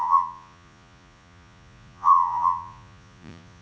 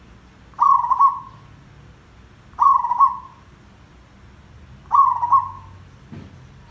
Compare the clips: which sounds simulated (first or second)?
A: first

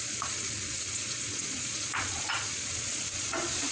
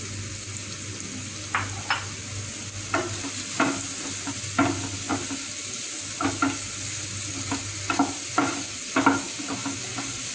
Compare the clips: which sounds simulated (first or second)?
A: first